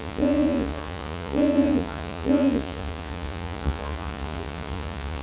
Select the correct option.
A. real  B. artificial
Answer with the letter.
B